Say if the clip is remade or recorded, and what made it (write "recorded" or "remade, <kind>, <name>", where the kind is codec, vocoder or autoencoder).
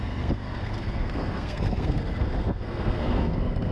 remade, codec, SNAC